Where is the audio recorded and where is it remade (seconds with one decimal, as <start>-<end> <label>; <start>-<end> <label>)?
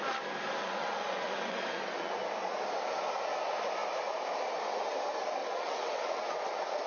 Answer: 0.0-0.6 recorded; 0.6-2.1 remade; 2.1-5.4 recorded; 5.4-6.2 remade; 6.2-6.9 recorded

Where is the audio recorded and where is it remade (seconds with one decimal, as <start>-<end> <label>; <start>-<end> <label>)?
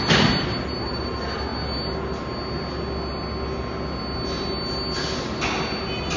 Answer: 0.0-6.2 recorded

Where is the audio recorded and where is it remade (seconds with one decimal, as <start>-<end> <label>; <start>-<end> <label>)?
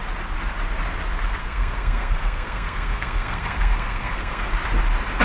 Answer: 0.0-1.4 recorded; 1.4-4.5 remade; 4.5-5.2 recorded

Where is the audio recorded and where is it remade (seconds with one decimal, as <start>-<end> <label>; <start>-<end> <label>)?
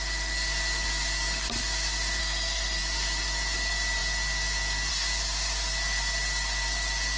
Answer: 0.0-2.2 recorded; 2.2-2.8 remade; 2.8-7.2 recorded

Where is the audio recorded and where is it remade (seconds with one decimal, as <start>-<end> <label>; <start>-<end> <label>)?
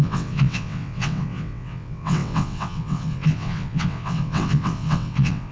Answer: 0.0-5.5 remade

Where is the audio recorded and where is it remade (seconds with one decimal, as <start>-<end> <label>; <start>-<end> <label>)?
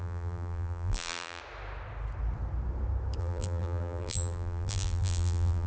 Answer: 0.0-1.4 remade; 1.4-3.2 recorded; 3.2-5.7 remade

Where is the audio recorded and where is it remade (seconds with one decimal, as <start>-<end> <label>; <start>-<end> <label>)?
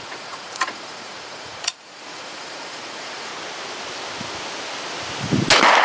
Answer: 0.0-3.3 remade; 3.3-5.8 recorded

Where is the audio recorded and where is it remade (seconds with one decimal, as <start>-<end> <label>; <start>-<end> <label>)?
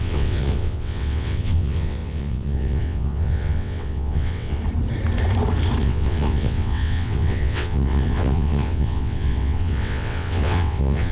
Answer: 0.0-4.6 remade; 4.6-5.8 recorded; 5.8-11.1 remade